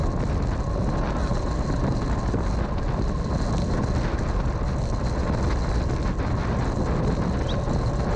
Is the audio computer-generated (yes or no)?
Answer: no